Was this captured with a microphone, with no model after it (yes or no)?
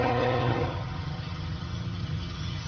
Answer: no